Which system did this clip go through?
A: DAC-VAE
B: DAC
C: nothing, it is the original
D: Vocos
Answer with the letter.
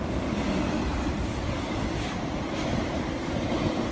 C